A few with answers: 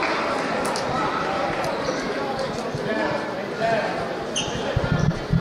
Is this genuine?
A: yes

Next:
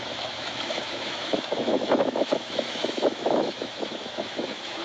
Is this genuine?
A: no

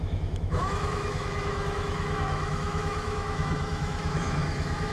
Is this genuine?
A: no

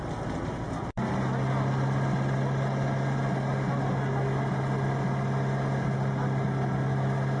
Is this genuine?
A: yes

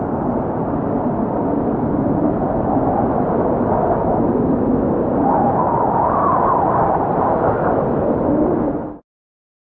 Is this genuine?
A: yes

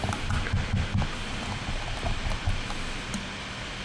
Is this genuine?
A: yes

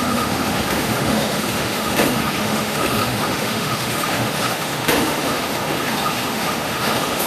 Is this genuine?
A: no